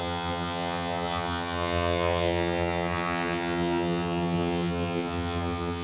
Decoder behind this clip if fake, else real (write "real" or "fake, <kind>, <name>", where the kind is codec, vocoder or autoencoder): fake, vocoder, HiFi-GAN